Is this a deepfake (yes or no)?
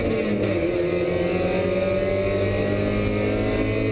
no